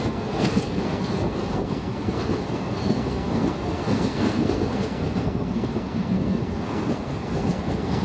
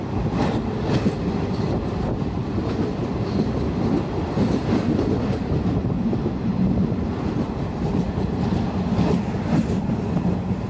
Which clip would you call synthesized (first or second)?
first